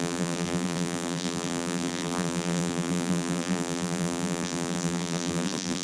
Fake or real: fake